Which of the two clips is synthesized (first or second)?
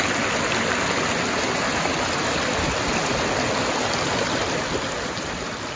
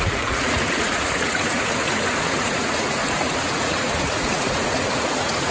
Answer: second